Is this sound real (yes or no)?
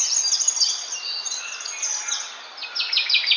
yes